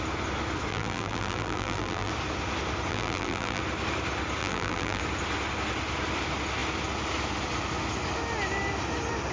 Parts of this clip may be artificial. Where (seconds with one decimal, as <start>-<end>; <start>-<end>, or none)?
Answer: 0.7-2.1; 2.9-3.6; 4.4-5.0